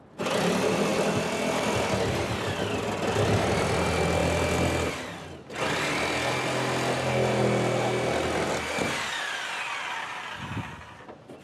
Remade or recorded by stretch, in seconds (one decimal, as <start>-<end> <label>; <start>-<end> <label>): 0.0-11.4 recorded